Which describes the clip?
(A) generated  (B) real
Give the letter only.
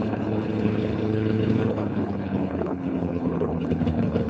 A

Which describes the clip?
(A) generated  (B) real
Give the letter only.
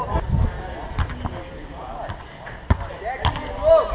B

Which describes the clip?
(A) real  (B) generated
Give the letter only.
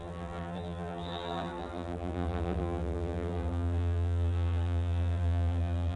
B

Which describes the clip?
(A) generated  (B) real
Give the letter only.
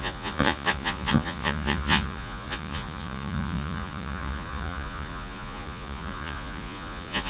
A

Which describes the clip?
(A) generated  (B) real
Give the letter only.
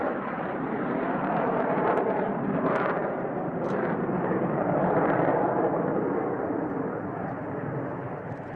A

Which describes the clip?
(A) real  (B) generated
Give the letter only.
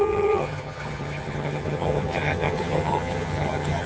B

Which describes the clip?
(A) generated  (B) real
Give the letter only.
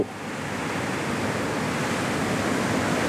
B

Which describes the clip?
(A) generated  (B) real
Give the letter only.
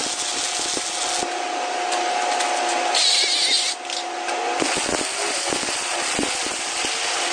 B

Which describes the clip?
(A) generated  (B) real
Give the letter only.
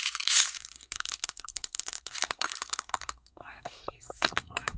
A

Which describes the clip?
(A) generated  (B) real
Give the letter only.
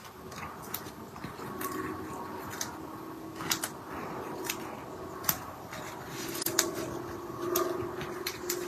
B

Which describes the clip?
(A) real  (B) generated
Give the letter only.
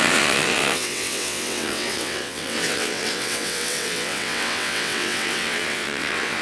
B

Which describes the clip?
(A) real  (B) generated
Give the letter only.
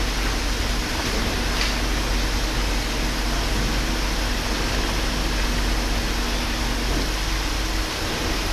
A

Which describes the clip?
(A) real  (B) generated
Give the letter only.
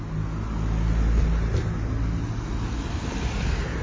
A